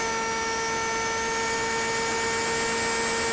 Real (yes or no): yes